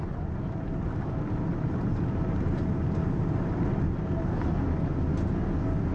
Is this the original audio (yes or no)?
yes